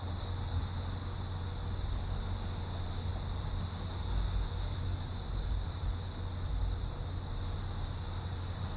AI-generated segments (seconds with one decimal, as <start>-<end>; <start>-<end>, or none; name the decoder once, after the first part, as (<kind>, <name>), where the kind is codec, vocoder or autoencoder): none